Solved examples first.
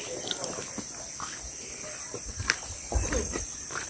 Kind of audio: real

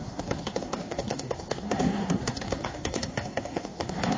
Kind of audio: fake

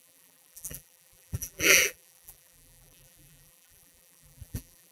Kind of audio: fake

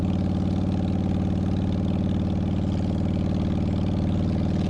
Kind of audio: real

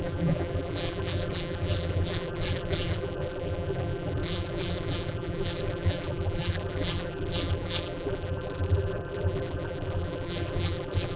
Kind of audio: fake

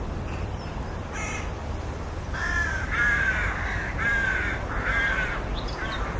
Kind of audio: fake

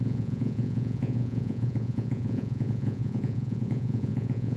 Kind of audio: fake